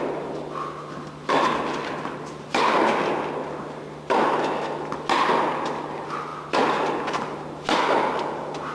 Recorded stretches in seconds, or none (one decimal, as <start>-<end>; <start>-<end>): 0.0-8.7